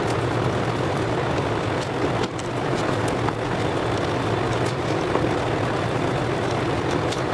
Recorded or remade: remade